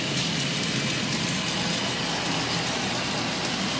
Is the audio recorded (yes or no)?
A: yes